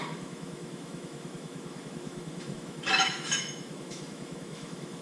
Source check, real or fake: fake